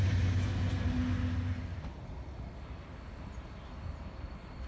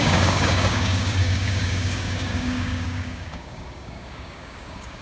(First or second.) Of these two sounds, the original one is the first